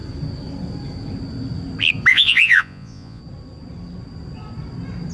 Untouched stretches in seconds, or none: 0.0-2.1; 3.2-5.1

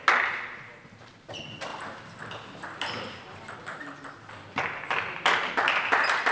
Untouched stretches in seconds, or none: 0.0-6.3

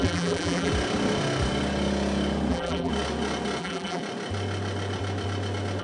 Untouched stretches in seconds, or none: 0.7-2.5; 2.9-3.6; 4.0-5.8

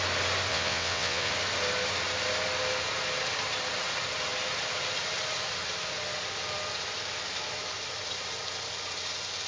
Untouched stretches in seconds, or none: 0.0-0.5; 1.3-9.5

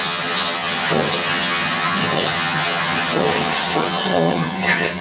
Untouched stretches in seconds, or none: none

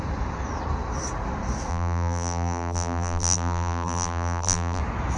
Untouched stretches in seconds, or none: 0.0-1.7; 4.8-5.2

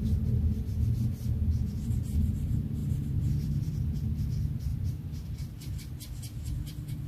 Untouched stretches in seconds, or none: 0.0-2.8; 3.7-4.7; 5.7-7.1